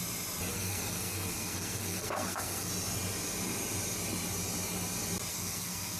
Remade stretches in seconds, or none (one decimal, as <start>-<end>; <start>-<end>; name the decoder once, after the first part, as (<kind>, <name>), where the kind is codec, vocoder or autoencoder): 0.5-2.7 (codec, SNAC); 5.3-6.0